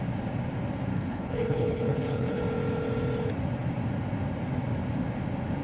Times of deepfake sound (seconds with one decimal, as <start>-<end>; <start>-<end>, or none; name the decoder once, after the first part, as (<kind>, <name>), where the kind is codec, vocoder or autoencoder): 0.9-2.4 (codec, HILCodec)